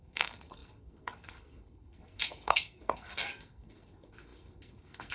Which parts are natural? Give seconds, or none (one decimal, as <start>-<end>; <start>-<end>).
none